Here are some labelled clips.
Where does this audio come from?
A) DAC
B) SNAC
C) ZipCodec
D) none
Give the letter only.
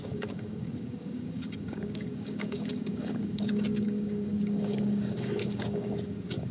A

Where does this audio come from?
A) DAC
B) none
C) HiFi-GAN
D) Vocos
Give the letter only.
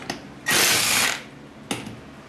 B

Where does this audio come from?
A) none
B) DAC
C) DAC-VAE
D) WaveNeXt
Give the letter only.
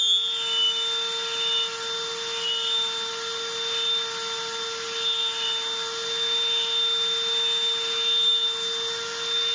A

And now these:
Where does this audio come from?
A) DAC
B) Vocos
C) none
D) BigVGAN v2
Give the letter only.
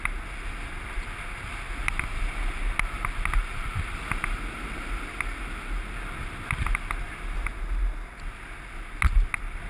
C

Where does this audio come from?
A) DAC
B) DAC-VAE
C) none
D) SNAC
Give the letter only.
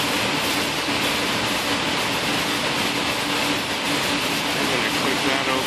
C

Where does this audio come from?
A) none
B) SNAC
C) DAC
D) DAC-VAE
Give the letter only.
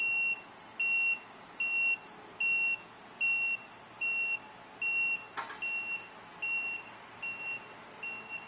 A